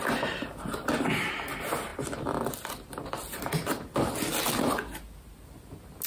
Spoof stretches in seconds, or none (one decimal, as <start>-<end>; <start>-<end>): none